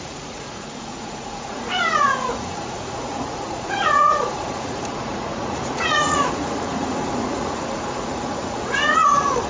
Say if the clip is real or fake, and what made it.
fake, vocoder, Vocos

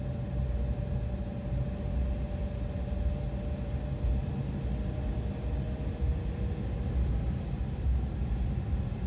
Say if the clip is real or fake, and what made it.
real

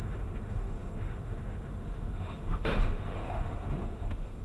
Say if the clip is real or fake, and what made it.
fake, autoencoder, DAC-VAE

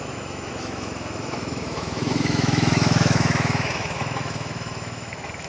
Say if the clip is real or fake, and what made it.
fake, autoencoder, DAC-VAE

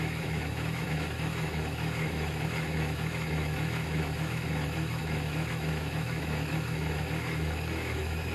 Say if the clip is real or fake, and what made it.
fake, autoencoder, DAC-VAE